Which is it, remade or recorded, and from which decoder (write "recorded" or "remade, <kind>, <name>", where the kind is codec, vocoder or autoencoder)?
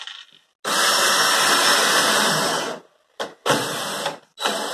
recorded